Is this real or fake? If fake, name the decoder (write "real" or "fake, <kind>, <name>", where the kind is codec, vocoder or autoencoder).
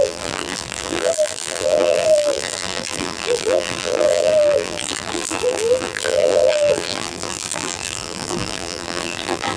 fake, vocoder, BigVGAN v2